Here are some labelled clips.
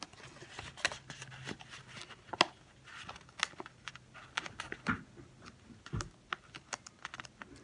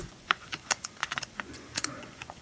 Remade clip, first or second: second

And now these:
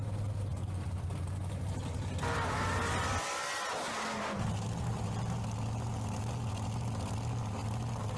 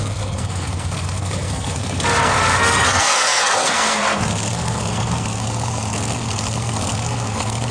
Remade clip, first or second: second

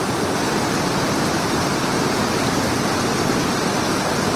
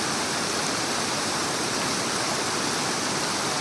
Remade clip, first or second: second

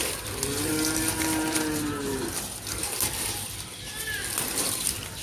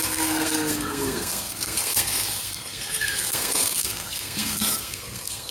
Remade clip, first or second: second